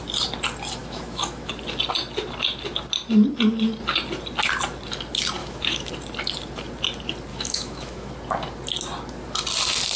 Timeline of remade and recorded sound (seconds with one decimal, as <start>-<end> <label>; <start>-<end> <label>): 0.0-0.8 recorded; 0.8-1.5 remade; 1.5-5.4 recorded; 5.4-5.9 remade; 5.9-7.3 recorded; 7.3-8.1 remade; 8.1-10.0 recorded